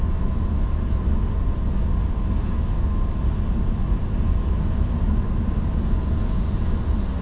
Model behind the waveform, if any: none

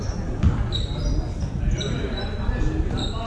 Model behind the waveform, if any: none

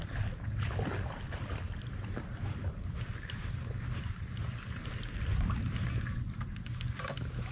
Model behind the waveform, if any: none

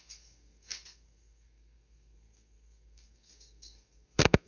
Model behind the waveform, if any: codec, SNAC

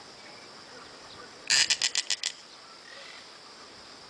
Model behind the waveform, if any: none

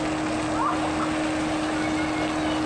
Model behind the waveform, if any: none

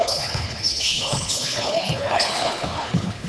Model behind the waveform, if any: codec, HILCodec